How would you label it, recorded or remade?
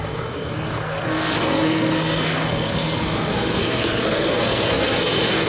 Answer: remade